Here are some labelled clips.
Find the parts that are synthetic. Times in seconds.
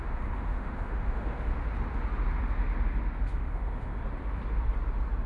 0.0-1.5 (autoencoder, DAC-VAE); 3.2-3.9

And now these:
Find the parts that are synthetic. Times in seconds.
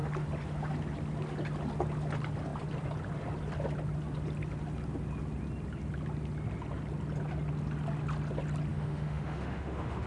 8.7-10.1 (autoencoder, DAC-VAE)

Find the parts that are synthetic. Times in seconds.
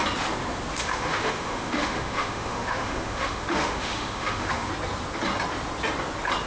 0.8-4.7 (autoencoder, DAC-VAE)